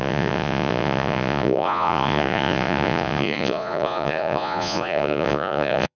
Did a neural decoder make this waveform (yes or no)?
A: yes